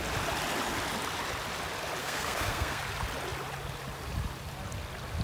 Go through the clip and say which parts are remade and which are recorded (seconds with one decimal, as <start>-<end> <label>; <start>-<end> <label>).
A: 0.0-2.0 recorded; 2.0-2.8 remade; 2.8-5.2 recorded